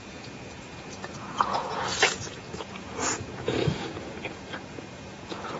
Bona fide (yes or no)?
no